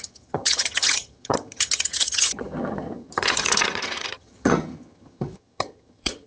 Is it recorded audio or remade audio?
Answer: remade